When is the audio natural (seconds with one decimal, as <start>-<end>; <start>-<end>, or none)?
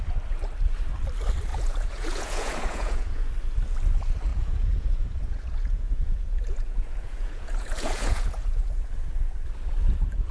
0.0-1.5; 3.3-4.3; 8.9-10.3